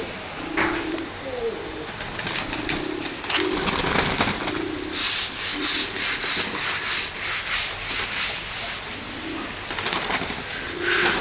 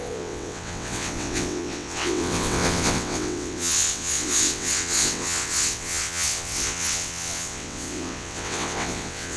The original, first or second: first